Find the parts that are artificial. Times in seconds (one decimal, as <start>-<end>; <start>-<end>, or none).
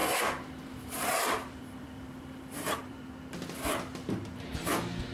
0.0-3.1; 3.9-4.5